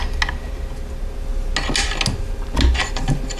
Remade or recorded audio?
recorded